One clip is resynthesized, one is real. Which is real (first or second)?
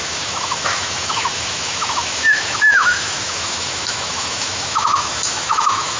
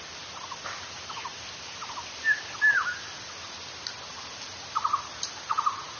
second